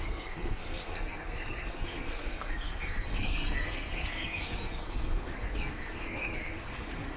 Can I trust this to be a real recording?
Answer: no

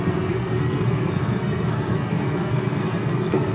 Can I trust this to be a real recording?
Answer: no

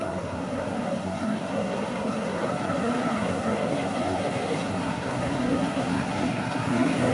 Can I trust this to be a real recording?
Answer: no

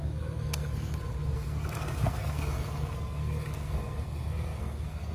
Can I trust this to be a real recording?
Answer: no